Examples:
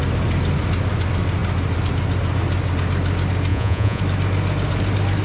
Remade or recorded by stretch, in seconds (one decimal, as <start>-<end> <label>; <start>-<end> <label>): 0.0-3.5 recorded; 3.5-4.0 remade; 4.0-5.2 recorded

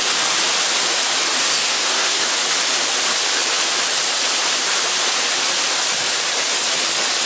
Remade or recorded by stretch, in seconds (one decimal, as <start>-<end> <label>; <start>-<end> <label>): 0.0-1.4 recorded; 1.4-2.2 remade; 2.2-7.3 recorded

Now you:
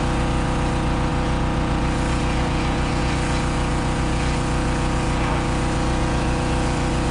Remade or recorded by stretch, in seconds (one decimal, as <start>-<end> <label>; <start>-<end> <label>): 0.0-7.1 remade

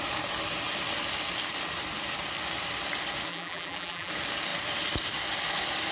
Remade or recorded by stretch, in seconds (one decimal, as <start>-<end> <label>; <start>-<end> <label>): 0.0-3.3 recorded; 3.3-4.1 remade; 4.1-5.9 recorded

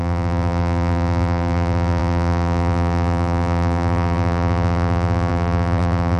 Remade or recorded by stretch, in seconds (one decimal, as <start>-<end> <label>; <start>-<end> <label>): 0.0-6.2 remade

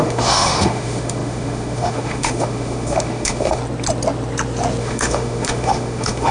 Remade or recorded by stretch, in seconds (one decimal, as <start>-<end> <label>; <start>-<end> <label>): 0.0-3.6 remade; 3.6-4.8 recorded; 4.8-6.3 remade

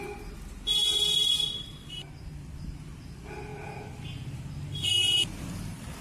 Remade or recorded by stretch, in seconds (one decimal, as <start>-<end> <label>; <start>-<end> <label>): 0.0-6.0 recorded

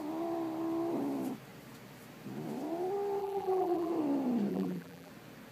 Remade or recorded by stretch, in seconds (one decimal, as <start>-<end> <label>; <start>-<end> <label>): 0.0-3.2 recorded; 3.2-3.9 remade; 3.9-4.5 recorded; 4.5-5.1 remade; 5.1-5.5 recorded